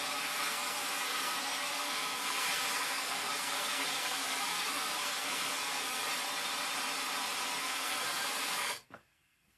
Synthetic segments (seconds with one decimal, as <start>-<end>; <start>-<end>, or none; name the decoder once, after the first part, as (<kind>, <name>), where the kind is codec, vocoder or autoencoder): 0.0-6.0 (codec, SNAC); 7.6-9.6